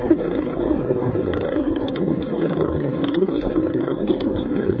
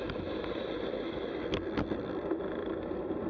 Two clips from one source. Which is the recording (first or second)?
second